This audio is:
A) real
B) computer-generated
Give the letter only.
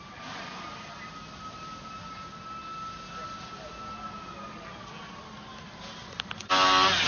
A